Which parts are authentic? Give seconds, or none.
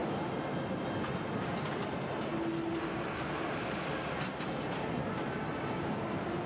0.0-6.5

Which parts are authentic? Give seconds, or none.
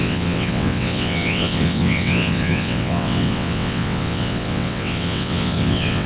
none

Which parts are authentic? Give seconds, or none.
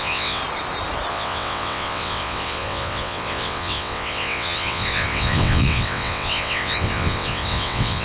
0.4-1.1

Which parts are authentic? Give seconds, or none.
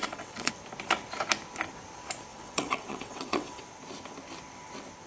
0.5-2.3; 3.6-5.1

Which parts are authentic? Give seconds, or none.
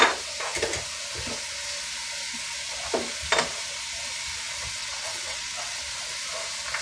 0.0-4.8; 5.8-6.8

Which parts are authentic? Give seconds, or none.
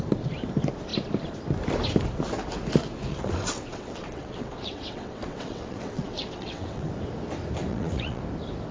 0.0-3.1; 6.9-7.7; 8.2-8.7